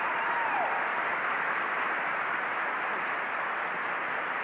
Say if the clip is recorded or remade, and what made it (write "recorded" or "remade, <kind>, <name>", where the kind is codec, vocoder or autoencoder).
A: recorded